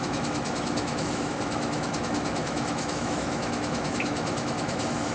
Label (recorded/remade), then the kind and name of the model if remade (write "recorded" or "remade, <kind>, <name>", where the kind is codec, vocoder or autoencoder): remade, autoencoder, DAC-VAE